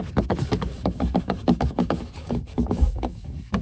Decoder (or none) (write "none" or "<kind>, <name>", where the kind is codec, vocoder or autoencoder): codec, DAC